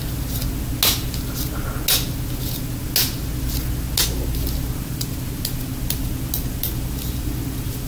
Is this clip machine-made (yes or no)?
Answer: no